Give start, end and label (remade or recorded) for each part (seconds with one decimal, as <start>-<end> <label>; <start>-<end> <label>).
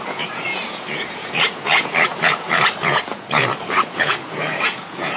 0.0-5.2 remade